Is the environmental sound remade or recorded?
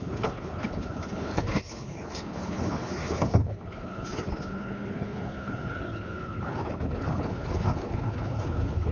remade